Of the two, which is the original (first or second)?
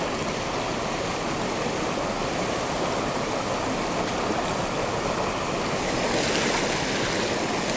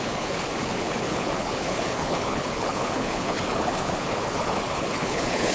first